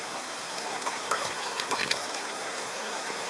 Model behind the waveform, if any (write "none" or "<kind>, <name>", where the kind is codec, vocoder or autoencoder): codec, SNAC